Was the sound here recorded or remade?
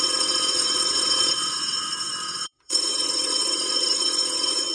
remade